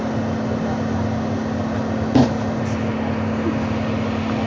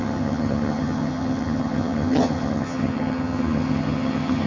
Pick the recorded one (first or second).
first